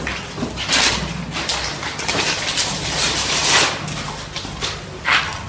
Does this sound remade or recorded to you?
recorded